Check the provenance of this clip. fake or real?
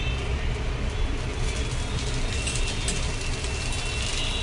real